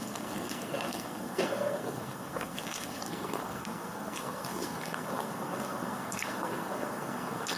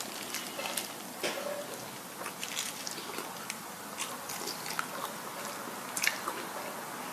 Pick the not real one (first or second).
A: first